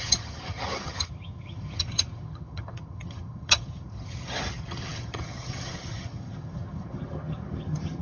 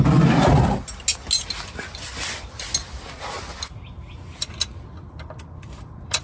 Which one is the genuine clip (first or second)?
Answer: second